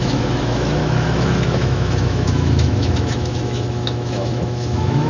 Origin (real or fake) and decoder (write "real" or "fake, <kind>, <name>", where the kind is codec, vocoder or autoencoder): fake, autoencoder, DAC-VAE